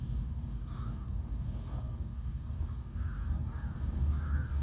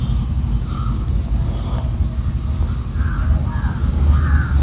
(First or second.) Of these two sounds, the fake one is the first